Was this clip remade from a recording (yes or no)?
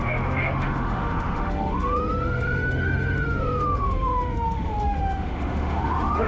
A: yes